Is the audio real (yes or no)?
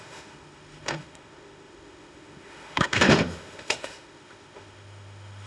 no